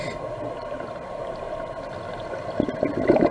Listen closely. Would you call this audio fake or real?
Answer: real